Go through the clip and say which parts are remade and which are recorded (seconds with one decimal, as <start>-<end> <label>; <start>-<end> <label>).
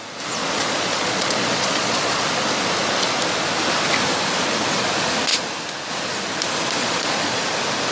0.0-0.4 recorded; 0.4-2.2 remade; 2.2-6.8 recorded; 6.8-7.4 remade; 7.4-7.9 recorded